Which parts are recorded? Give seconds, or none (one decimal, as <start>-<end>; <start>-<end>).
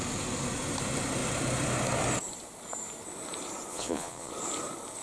0.0-3.7; 4.3-5.0